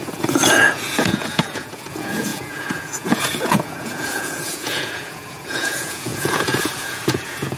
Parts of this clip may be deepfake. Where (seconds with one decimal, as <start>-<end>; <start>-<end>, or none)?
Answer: 0.0-7.6